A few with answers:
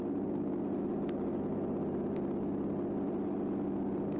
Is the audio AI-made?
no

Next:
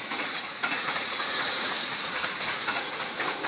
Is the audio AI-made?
yes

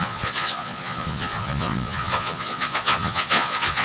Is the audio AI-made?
yes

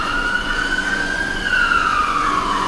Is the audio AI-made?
yes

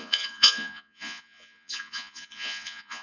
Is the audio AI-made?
yes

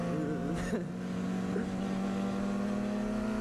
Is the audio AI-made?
no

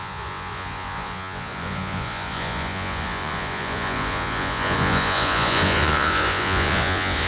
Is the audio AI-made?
yes